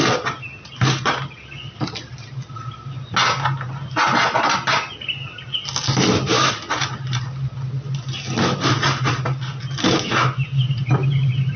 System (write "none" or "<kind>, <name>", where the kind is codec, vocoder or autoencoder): none